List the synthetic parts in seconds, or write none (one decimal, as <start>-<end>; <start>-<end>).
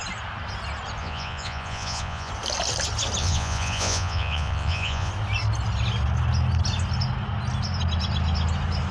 1.0-2.3; 3.2-5.1